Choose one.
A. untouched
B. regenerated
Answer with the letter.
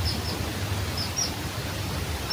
A